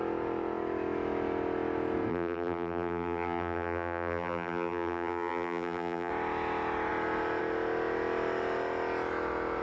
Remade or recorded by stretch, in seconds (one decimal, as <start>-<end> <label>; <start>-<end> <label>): 0.0-2.1 recorded; 2.1-6.1 remade; 6.1-9.6 recorded